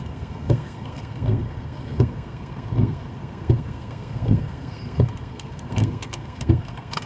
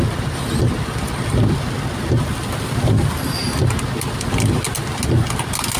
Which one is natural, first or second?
second